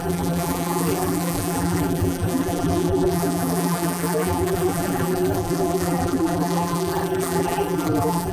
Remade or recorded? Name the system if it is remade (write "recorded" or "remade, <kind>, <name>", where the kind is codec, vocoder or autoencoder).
remade, vocoder, BigVGAN v2